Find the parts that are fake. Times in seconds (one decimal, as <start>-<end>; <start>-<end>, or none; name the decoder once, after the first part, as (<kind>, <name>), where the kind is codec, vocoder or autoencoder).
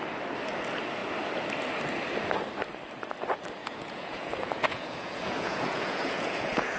3.6-6.8 (vocoder, Vocos)